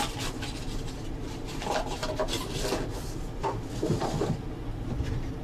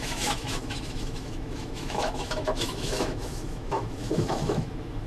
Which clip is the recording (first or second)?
first